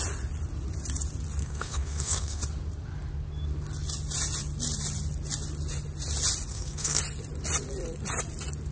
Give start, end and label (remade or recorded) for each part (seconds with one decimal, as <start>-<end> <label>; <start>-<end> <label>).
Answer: 0.0-1.4 recorded; 1.4-2.4 remade; 2.4-6.5 recorded; 6.5-7.0 remade; 7.0-8.7 recorded